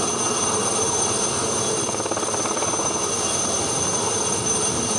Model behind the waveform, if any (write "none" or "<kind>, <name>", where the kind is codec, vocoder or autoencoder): none